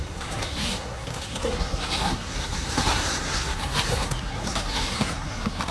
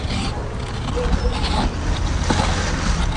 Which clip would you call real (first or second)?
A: second